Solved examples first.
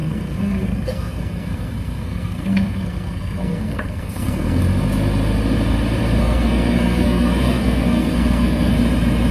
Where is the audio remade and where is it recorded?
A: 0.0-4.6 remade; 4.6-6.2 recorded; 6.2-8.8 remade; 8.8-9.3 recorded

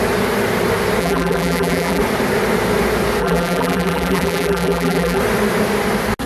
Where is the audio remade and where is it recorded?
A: 0.0-1.0 recorded; 1.0-2.0 remade; 2.0-3.2 recorded; 3.2-5.2 remade; 5.2-6.3 recorded

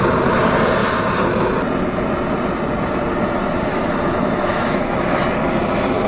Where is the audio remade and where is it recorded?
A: 0.0-3.7 recorded; 3.7-5.2 remade; 5.2-6.1 recorded

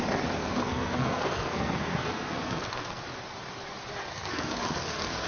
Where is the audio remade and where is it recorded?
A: 0.0-0.4 recorded; 0.4-3.0 remade; 3.0-4.1 recorded; 4.1-5.3 remade

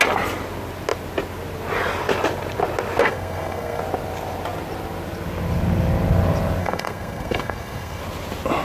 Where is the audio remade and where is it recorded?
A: 0.0-3.0 recorded; 3.0-3.8 remade; 3.8-6.6 recorded; 6.6-8.0 remade; 8.0-8.6 recorded

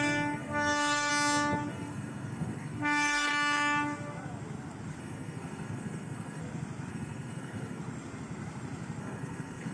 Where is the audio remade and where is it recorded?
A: 0.0-1.1 remade; 1.1-1.7 recorded; 1.7-3.3 remade; 3.3-5.0 recorded; 5.0-6.4 remade; 6.4-6.9 recorded; 6.9-7.8 remade; 7.8-9.0 recorded; 9.0-9.7 remade